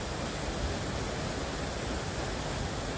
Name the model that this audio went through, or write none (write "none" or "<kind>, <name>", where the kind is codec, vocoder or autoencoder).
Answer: none